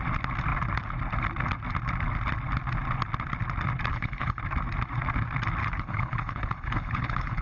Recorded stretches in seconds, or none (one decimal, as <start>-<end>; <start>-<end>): 0.0-3.9; 4.4-5.6